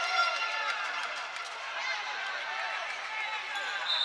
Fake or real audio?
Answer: real